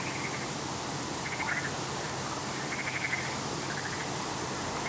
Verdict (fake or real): real